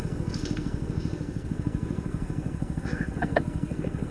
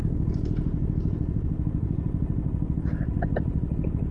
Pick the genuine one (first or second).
second